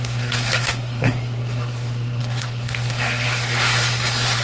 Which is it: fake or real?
fake